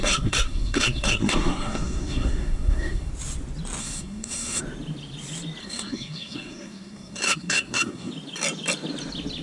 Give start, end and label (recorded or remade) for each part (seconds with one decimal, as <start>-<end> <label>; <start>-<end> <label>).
0.0-3.1 remade; 3.1-3.8 recorded; 3.8-4.6 remade; 4.6-5.6 recorded; 5.6-8.1 remade; 8.1-9.4 recorded